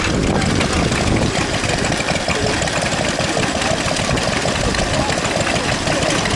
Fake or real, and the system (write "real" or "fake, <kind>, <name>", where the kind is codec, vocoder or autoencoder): real